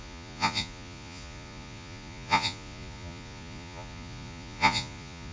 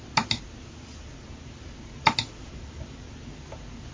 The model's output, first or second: first